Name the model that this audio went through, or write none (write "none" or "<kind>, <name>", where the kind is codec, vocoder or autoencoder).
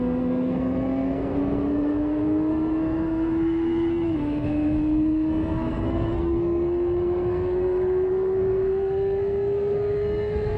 codec, SNAC